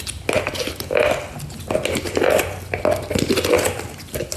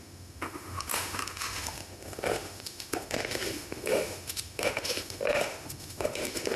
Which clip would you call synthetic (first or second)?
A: second